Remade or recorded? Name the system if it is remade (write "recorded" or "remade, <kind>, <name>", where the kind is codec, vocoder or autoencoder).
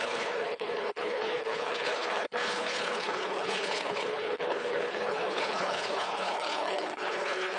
remade, codec, HILCodec